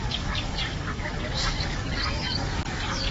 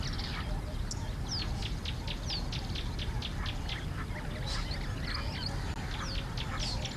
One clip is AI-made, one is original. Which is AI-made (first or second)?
first